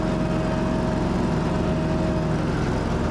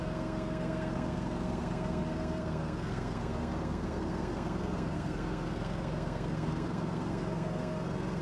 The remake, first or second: second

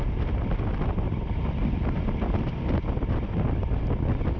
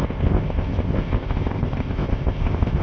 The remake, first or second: second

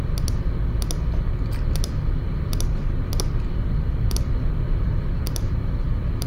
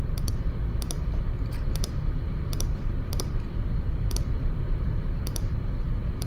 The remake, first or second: second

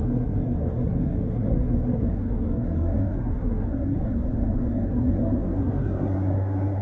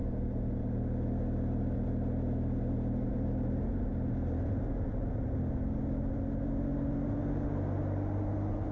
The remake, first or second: first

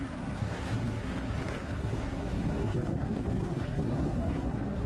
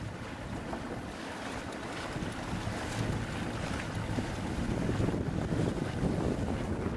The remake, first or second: first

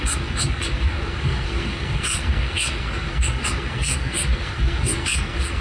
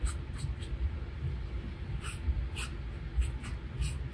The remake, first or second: first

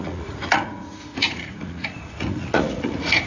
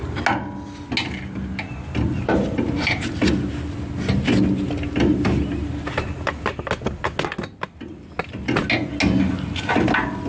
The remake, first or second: first